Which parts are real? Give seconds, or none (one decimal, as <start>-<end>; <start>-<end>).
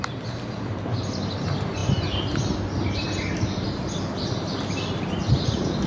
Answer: 0.0-5.9